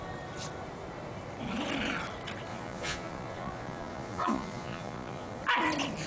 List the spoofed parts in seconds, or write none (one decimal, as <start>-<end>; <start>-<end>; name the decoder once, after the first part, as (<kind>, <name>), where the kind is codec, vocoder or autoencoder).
2.5-5.4 (vocoder, Vocos)